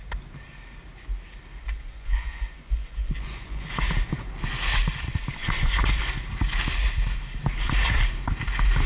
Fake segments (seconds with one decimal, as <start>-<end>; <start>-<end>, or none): 1.6-3.8; 5.4-6.0